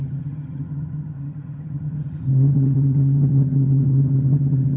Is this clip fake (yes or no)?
yes